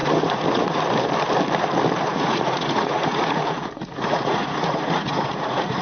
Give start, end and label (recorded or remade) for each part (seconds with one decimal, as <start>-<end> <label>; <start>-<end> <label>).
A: 0.0-0.8 remade; 0.8-2.1 recorded; 2.1-5.8 remade